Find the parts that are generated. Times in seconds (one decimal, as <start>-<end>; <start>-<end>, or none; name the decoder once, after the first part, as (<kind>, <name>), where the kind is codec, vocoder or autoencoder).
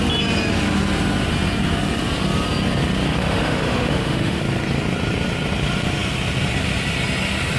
3.2-4.4 (autoencoder, DAC-VAE)